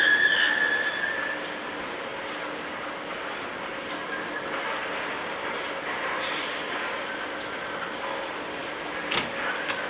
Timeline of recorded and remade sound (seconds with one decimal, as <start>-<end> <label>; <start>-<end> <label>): 0.0-9.9 recorded